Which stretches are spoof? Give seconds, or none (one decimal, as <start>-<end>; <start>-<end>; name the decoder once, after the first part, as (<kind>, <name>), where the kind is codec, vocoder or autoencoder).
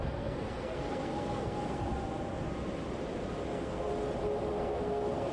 0.0-1.9 (codec, SNAC); 3.5-3.9; 4.5-5.3